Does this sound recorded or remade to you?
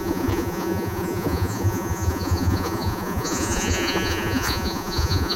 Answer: remade